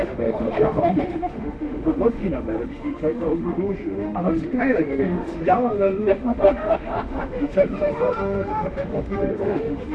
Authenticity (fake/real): fake